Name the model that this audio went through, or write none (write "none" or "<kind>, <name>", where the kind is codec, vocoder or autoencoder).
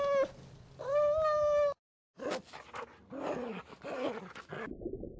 none